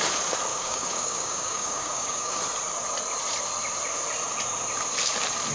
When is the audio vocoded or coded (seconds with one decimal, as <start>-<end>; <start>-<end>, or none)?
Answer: 0.5-2.4